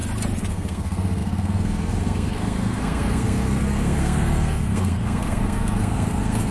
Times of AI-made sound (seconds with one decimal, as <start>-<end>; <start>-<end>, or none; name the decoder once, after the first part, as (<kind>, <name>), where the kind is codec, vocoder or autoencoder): 0.5-6.5 (codec, SNAC)